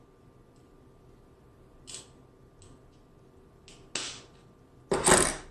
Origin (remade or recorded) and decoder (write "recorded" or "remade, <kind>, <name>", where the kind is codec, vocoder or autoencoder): recorded